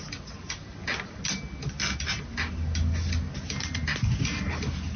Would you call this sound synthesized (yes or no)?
no